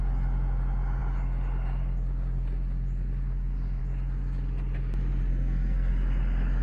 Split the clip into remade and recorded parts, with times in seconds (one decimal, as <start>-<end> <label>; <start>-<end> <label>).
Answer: 0.0-5.3 recorded; 5.3-5.9 remade; 5.9-6.6 recorded